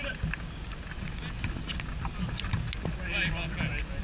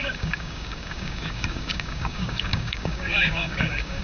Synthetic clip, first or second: second